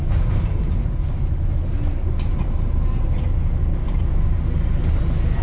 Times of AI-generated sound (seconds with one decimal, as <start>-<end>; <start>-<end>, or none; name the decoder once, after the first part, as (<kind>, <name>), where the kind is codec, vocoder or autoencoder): 0.0-0.7 (vocoder, BigVGAN v2); 2.3-4.4